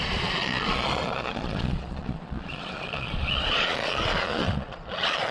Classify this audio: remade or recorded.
remade